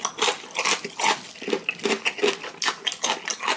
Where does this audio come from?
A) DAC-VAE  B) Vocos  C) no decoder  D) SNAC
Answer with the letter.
C